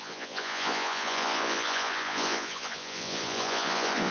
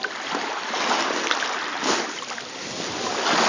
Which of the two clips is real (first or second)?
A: second